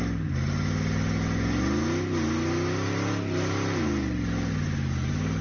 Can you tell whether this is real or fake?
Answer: real